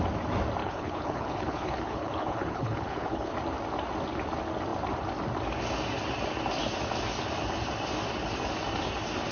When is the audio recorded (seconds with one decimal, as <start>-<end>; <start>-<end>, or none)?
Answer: 0.0-0.6; 3.3-9.3